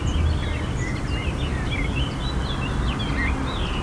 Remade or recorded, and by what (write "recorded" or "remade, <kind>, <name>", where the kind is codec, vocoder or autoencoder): recorded